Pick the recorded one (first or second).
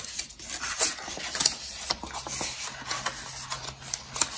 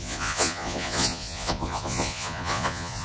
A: first